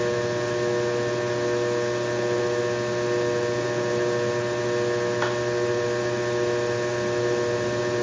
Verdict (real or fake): real